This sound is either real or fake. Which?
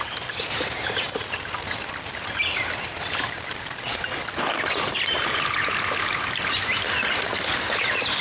real